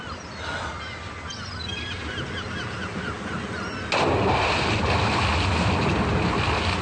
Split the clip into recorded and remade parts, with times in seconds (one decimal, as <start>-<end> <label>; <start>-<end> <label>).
0.0-6.8 recorded